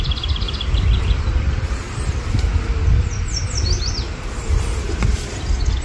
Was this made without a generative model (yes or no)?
yes